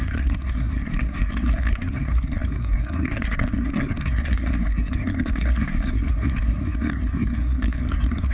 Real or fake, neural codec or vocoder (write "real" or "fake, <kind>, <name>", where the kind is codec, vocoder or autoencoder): fake, codec, SNAC